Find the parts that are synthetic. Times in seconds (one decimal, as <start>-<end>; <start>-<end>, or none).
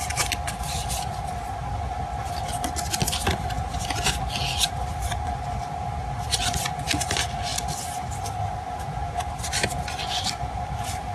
none